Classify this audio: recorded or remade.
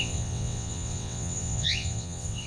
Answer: remade